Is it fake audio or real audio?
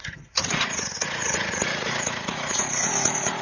fake